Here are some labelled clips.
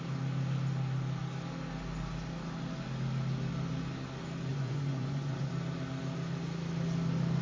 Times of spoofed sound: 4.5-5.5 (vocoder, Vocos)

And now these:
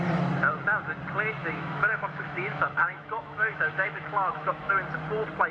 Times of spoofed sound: 1.4-4.7 (autoencoder, DAC-VAE)

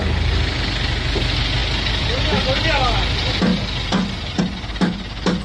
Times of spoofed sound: none